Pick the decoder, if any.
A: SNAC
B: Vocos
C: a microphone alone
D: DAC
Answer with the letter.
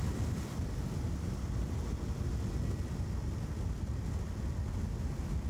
C